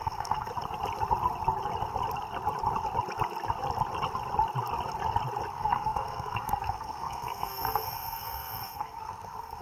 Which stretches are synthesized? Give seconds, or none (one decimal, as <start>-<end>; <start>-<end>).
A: 0.0-0.5; 5.5-9.6